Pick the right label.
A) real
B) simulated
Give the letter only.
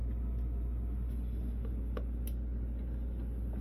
A